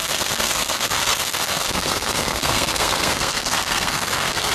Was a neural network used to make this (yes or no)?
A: yes